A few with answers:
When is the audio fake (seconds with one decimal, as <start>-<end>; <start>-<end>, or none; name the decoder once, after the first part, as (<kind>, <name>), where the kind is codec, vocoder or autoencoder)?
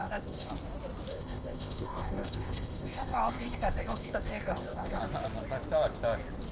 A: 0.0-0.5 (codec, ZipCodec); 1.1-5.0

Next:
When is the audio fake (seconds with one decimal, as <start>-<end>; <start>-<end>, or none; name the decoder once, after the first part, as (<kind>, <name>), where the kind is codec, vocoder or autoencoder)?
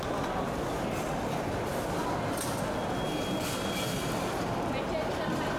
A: none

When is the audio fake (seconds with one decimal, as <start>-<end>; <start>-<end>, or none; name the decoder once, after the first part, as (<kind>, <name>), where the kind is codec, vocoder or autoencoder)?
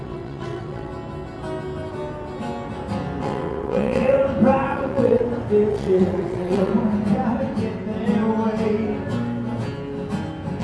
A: 0.0-0.9 (vocoder, WaveNeXt); 3.2-4.2; 4.7-5.2; 5.7-6.7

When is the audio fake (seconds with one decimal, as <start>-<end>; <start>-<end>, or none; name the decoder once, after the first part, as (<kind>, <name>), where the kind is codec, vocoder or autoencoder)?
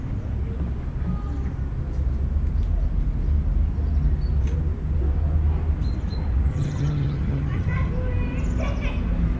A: 6.5-7.9 (vocoder, HiFi-GAN)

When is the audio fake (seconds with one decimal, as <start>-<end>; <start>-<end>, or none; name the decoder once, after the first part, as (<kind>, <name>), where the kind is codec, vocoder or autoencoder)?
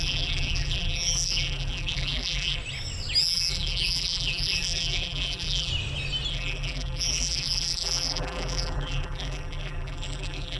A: 0.0-2.6 (vocoder, BigVGAN v2); 3.2-5.7; 6.3-10.6